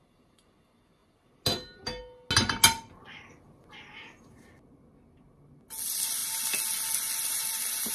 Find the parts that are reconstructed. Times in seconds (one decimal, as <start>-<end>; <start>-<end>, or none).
none